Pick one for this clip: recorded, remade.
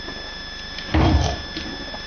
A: recorded